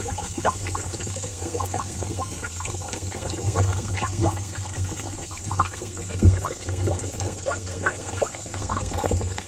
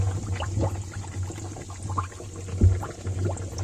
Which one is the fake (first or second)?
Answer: first